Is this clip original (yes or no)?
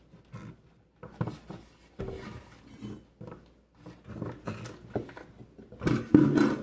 yes